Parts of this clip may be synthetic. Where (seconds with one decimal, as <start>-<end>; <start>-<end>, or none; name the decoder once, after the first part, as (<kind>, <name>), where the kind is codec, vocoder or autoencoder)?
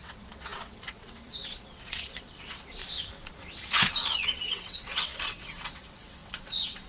0.0-2.8 (vocoder, WaveNeXt); 4.4-6.9